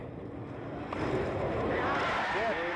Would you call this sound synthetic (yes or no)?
no